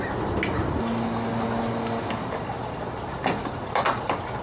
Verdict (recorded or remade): recorded